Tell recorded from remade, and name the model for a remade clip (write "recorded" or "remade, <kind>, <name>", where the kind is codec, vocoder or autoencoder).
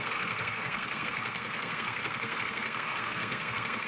remade, codec, SNAC